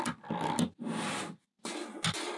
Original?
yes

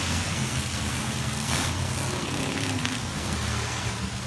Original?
no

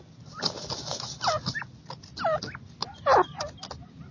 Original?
yes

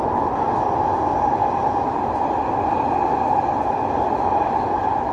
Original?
yes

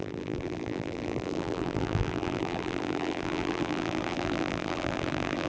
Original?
no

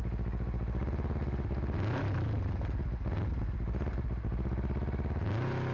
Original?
yes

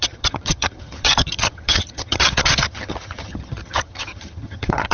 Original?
no